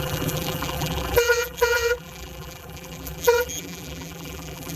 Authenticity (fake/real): fake